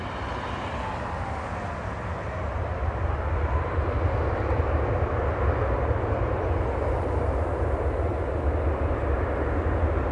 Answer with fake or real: real